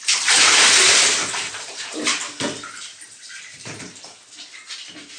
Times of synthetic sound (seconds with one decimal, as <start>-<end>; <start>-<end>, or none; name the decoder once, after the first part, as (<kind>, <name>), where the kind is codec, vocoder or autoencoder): none